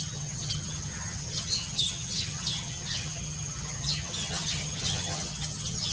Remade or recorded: remade